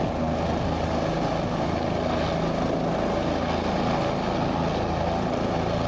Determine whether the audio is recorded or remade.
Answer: recorded